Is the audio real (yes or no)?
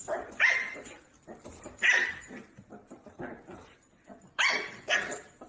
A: yes